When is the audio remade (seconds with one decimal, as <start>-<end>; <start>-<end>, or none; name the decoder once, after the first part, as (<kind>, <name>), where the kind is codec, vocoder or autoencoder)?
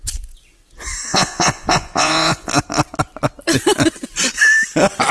1.1-2.5 (vocoder, Vocos)